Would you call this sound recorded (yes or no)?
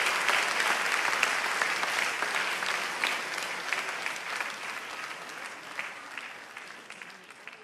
yes